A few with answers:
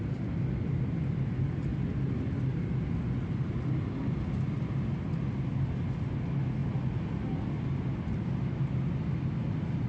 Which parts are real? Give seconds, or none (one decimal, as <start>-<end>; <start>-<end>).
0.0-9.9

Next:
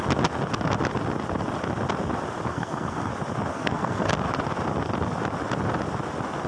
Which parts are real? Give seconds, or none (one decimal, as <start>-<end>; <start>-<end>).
0.0-2.5; 3.1-3.5; 4.1-6.5

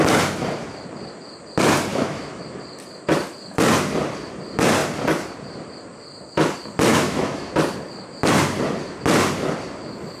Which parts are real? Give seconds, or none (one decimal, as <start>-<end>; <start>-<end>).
0.0-1.9; 2.4-6.9; 7.5-10.2